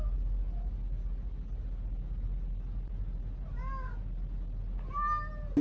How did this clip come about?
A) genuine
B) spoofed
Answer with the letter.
A